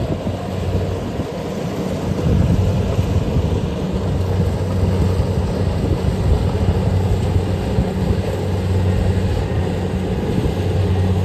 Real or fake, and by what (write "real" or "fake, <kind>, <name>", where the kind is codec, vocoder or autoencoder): real